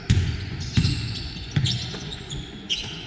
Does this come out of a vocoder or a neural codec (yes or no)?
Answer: yes